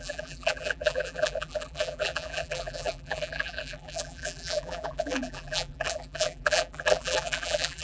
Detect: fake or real fake